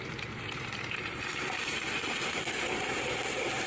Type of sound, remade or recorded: remade